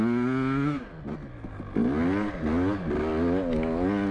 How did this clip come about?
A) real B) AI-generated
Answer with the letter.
A